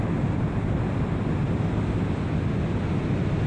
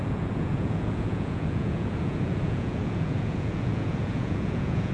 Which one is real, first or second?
first